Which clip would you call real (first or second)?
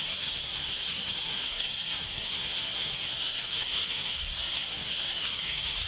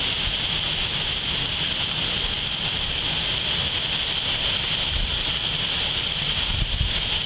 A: second